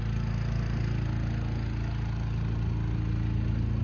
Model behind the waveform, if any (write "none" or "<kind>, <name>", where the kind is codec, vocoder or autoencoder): none